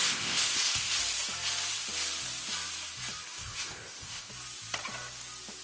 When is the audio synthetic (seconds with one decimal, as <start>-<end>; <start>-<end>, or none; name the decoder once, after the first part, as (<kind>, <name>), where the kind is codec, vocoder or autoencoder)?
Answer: 0.0-0.9 (codec, ZipCodec); 3.4-4.3

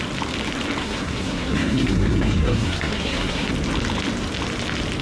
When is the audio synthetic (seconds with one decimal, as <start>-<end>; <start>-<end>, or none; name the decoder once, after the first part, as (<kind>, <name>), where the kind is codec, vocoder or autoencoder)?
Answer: 0.8-3.5 (codec, SNAC)

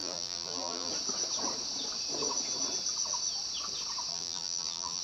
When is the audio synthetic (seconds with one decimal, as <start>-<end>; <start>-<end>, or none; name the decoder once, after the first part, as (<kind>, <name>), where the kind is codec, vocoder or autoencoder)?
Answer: 0.0-0.9 (vocoder, BigVGAN v2); 4.1-5.0

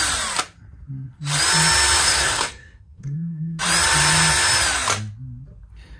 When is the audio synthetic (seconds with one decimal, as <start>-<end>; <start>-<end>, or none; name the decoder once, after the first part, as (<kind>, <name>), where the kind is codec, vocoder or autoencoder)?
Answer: 2.0-3.6 (codec, SNAC)